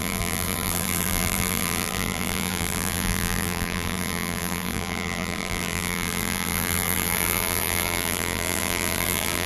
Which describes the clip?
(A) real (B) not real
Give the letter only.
B